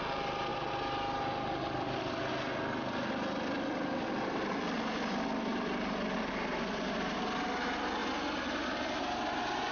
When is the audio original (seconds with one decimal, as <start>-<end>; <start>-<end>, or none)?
0.0-0.5; 2.3-9.7